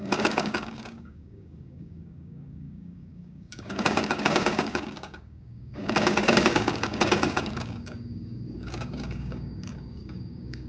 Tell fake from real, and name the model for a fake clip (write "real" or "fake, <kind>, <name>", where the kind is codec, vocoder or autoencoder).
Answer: fake, codec, DAC